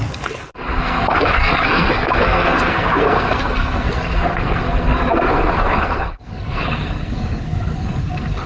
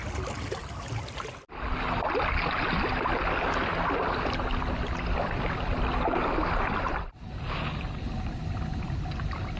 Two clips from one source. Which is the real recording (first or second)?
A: second